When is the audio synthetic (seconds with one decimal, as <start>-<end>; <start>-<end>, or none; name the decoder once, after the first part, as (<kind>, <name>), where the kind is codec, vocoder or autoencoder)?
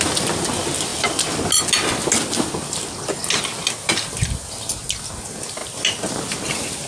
none